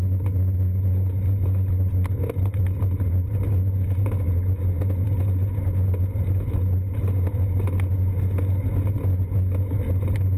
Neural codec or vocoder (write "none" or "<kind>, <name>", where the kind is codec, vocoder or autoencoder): none